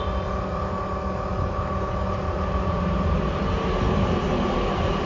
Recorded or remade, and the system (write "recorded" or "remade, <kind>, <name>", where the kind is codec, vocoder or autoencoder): recorded